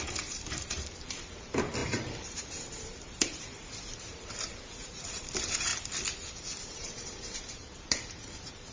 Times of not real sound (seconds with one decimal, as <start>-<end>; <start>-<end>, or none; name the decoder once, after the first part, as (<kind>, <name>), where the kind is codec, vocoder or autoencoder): 0.0-5.7 (vocoder, BigVGAN v2); 6.6-8.7